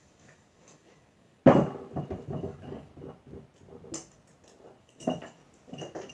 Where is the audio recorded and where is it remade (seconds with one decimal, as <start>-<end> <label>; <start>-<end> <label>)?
0.0-1.4 remade; 1.4-2.4 recorded; 2.4-2.9 remade; 2.9-4.8 recorded; 4.8-5.4 remade; 5.4-6.1 recorded